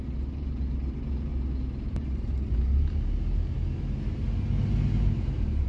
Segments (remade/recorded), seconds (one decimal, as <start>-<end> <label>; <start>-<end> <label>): 0.0-1.3 remade; 1.3-1.9 recorded; 1.9-2.3 remade; 2.3-5.3 recorded; 5.3-5.7 remade